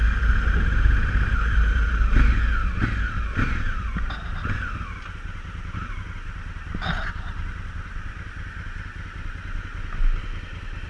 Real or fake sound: real